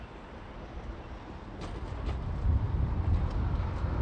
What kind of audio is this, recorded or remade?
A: recorded